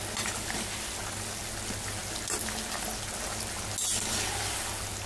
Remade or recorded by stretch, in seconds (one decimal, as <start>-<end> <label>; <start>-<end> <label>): 0.0-5.1 recorded